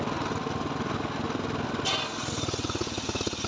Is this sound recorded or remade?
recorded